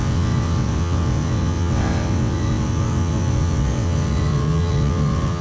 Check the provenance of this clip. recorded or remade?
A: remade